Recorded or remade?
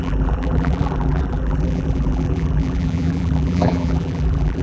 remade